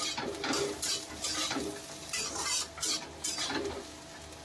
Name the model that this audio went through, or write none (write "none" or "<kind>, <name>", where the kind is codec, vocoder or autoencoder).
none